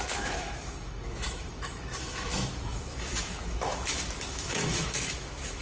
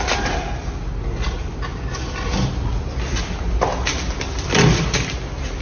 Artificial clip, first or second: first